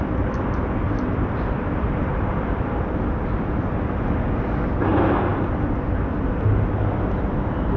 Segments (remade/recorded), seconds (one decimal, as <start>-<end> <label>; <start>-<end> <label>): 0.0-3.5 remade; 3.5-5.3 recorded; 5.3-6.3 remade; 6.3-7.8 recorded